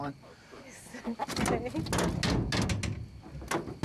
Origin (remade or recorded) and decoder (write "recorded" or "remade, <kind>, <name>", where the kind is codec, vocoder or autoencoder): recorded